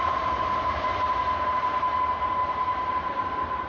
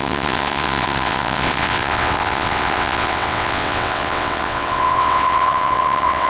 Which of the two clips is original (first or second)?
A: first